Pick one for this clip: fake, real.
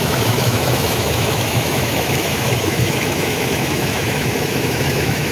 fake